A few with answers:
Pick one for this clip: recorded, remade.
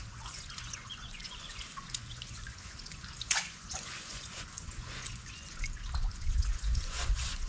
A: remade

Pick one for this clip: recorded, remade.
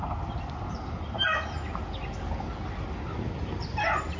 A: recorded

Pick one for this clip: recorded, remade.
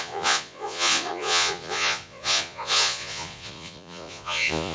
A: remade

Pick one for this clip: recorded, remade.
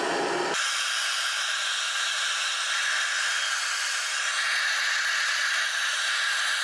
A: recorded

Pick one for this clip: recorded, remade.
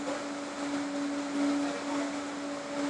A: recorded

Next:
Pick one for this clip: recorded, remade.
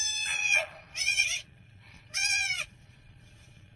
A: remade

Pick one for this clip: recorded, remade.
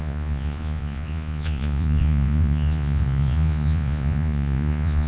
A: remade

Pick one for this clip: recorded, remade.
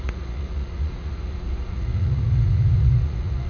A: remade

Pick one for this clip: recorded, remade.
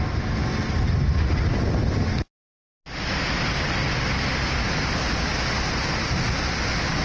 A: recorded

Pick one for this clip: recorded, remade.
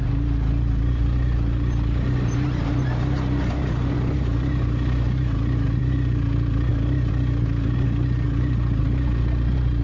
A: recorded